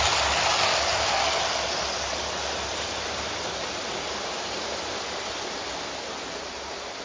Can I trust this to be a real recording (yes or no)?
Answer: yes